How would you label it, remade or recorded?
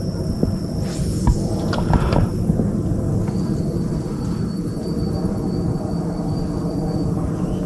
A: recorded